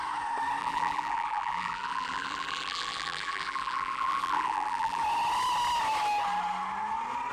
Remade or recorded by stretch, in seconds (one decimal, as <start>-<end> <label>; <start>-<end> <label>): 0.0-0.6 recorded; 0.6-5.0 remade; 5.0-7.3 recorded